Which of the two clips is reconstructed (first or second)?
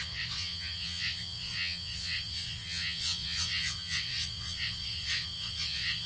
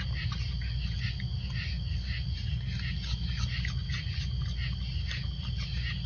first